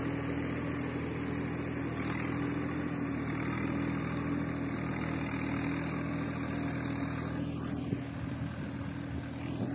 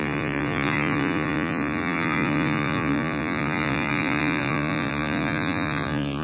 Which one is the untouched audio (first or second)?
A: first